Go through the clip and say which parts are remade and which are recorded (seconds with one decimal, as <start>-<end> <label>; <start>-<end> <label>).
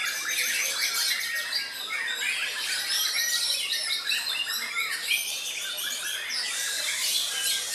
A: 0.0-2.4 recorded; 2.4-3.1 remade; 3.1-5.0 recorded; 5.0-5.7 remade; 5.7-6.6 recorded; 6.6-7.3 remade; 7.3-7.7 recorded